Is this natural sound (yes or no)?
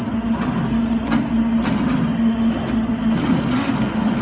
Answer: yes